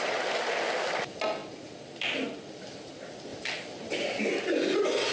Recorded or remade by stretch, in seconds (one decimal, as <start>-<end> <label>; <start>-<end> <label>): 0.0-5.1 recorded